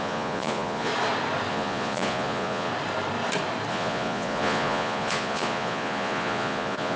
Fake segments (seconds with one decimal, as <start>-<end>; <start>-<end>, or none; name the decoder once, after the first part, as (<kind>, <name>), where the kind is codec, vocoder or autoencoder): 0.0-0.9 (vocoder, Vocos); 1.5-2.7; 3.7-7.0